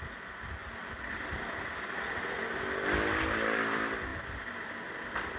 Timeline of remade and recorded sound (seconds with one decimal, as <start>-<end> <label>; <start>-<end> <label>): 0.0-5.4 recorded

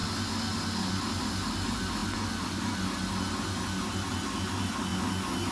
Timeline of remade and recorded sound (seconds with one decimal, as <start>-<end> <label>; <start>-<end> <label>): 0.0-5.5 recorded

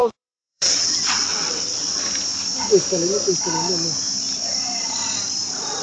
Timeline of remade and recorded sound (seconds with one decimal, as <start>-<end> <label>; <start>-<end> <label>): 0.0-2.0 remade; 2.0-5.8 recorded

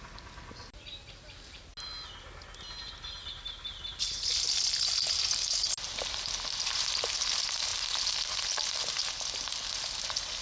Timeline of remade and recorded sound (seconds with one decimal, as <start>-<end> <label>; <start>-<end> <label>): 0.0-10.4 recorded

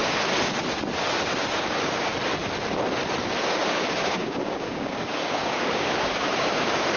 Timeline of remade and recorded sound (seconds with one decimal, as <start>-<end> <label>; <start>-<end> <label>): 0.0-1.5 recorded; 1.5-2.1 remade; 2.1-3.4 recorded; 3.4-7.0 remade